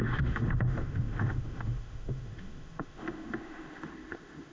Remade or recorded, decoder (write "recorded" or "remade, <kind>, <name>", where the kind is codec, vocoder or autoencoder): remade, autoencoder, DAC-VAE